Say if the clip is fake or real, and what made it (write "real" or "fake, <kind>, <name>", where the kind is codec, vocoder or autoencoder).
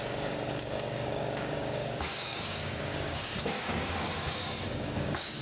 fake, codec, DAC